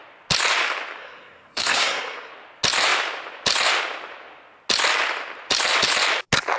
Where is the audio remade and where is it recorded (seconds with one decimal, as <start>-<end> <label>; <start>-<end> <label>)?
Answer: 0.0-1.0 recorded; 1.0-2.3 remade; 2.3-6.6 recorded